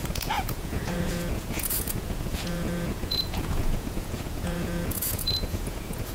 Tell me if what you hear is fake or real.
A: fake